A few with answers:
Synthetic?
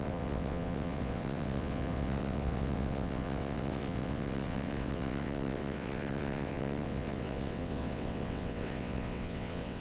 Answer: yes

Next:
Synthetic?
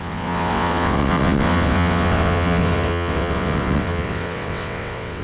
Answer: yes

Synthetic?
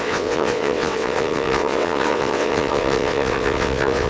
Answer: yes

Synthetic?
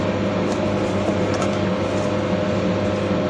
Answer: no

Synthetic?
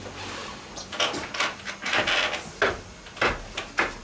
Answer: no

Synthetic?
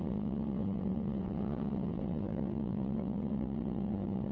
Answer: yes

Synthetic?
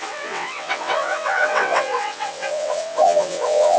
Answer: yes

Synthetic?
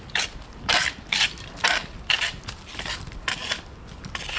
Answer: no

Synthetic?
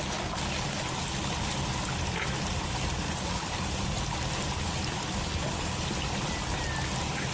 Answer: no